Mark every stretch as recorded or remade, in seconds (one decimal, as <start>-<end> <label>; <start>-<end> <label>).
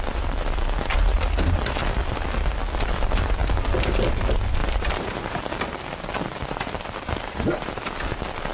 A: 0.0-4.6 recorded; 4.6-5.4 remade; 5.4-7.0 recorded; 7.0-7.8 remade; 7.8-8.5 recorded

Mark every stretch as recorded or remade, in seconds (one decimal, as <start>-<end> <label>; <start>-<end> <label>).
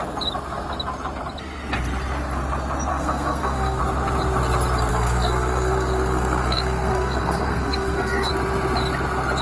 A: 0.0-2.9 recorded; 2.9-3.8 remade; 3.8-4.9 recorded; 4.9-8.3 remade; 8.3-9.4 recorded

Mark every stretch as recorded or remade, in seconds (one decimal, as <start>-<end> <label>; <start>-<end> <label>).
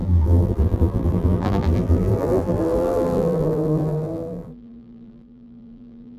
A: 0.0-6.2 remade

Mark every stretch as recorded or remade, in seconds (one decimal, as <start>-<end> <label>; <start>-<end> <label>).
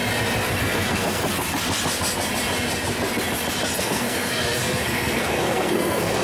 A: 0.0-0.6 recorded; 0.6-1.2 remade; 1.2-3.8 recorded; 3.8-6.2 remade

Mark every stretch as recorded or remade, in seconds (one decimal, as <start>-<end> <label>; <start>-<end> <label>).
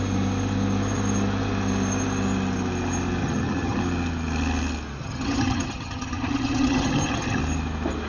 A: 0.0-3.2 recorded; 3.2-3.8 remade; 3.8-5.0 recorded; 5.0-7.4 remade; 7.4-8.1 recorded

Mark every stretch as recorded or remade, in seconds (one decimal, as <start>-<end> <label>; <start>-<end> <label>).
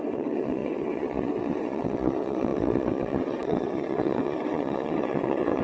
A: 0.0-5.6 remade